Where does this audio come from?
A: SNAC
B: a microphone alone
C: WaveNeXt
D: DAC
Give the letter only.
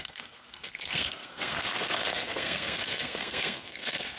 A